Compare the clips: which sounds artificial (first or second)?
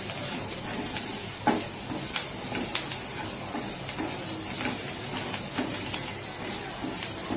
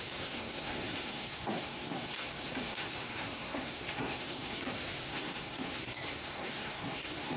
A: second